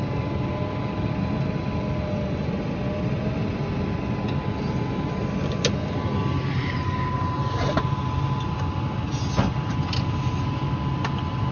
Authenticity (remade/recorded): recorded